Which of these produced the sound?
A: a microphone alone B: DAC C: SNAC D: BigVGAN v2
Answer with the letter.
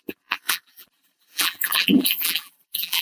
D